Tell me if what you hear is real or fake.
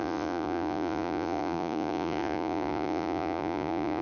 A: fake